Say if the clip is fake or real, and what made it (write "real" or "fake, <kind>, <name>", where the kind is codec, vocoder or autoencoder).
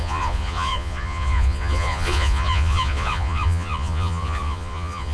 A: fake, vocoder, Vocos